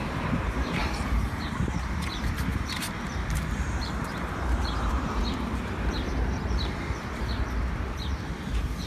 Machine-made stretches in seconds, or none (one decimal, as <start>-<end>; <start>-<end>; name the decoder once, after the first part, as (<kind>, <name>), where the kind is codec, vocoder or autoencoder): 0.0-0.8 (vocoder, BigVGAN v2); 1.5-8.9